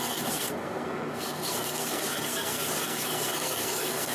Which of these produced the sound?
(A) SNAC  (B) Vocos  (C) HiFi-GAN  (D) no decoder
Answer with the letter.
A